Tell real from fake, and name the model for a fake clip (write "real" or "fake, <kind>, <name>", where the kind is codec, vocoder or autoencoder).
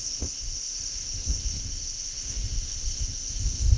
fake, codec, ZipCodec